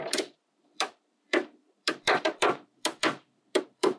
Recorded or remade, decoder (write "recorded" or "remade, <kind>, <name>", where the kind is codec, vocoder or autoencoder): remade, vocoder, BigVGAN v2